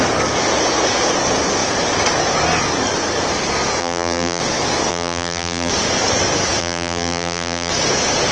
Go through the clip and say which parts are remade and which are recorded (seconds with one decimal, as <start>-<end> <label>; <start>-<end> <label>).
0.0-3.8 recorded; 3.8-4.4 remade; 4.4-4.9 recorded; 4.9-5.7 remade; 5.7-6.6 recorded; 6.6-7.7 remade; 7.7-8.3 recorded